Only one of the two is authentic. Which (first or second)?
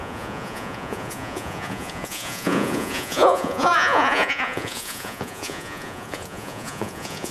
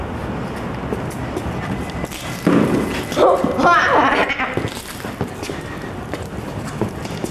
second